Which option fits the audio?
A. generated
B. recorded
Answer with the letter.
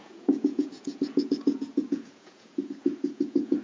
A